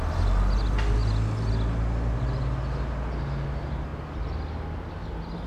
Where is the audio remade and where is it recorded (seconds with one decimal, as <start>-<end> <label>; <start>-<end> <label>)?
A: 0.0-5.5 recorded